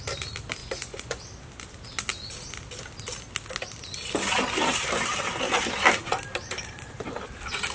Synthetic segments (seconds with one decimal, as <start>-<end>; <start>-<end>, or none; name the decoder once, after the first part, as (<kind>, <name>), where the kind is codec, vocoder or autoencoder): 0.6-1.2 (vocoder, Vocos)